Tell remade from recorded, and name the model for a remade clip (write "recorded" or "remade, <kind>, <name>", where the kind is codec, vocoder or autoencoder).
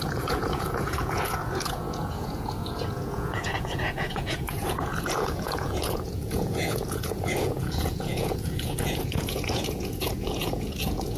remade, vocoder, Vocos